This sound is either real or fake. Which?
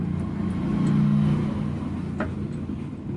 real